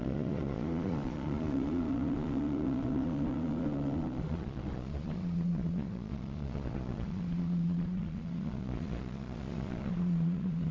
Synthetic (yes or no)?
yes